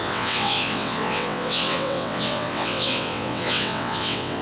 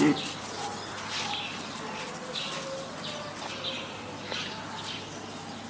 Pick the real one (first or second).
second